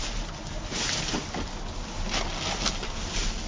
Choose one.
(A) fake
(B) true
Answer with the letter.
B